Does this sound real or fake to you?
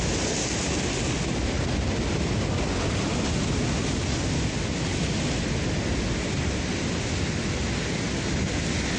real